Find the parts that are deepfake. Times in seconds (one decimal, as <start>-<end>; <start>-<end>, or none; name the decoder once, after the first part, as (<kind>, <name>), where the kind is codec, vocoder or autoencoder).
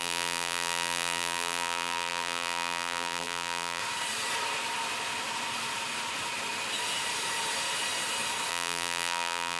0.0-3.8 (vocoder, BigVGAN v2); 8.5-9.6